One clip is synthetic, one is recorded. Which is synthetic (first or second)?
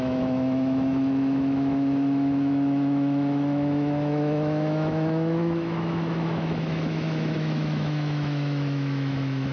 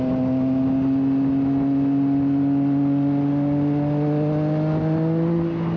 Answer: first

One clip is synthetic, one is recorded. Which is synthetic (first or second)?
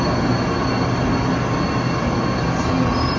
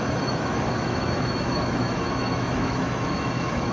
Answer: second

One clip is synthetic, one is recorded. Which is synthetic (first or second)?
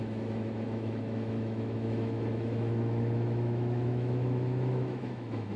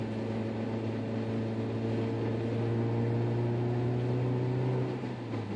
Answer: first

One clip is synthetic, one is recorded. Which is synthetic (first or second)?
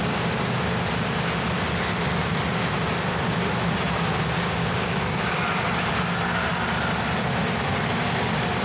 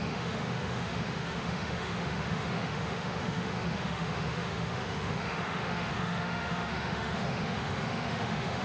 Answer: second